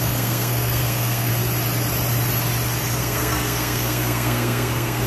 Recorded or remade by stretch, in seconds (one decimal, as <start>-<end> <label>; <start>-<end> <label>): 0.0-1.3 remade; 1.3-3.0 recorded; 3.0-5.1 remade